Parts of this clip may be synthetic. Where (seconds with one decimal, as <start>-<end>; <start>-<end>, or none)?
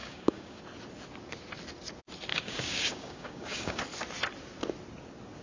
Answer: 0.0-0.6; 2.3-3.8